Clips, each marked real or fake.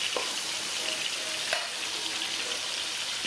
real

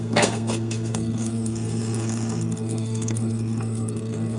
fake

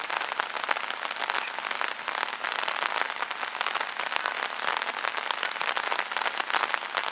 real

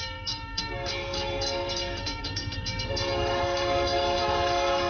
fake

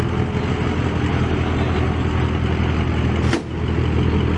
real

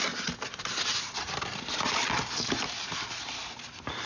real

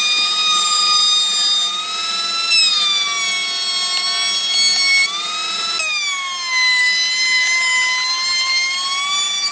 real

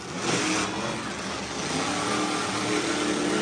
real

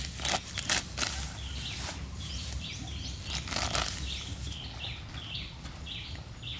real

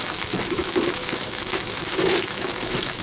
fake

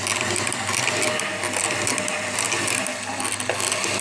real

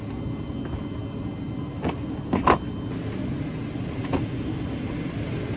real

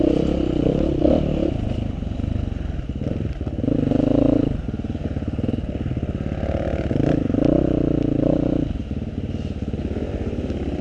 real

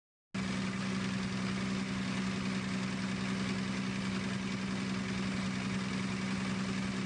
real